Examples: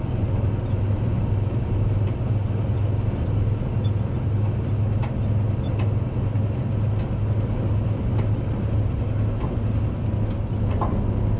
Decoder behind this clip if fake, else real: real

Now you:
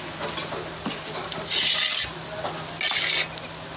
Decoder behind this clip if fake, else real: real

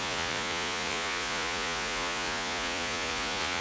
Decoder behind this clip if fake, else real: fake, vocoder, Vocos